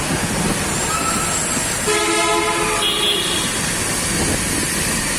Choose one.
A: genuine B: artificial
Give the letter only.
A